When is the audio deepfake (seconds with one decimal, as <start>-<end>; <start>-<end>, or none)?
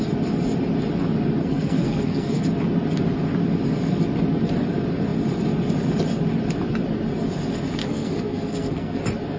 1.4-2.4; 7.8-9.0